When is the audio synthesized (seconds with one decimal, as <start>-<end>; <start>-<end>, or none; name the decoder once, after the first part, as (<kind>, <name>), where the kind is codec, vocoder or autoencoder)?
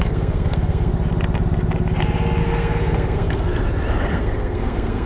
0.0-0.9 (codec, SNAC); 2.4-3.5; 4.0-5.1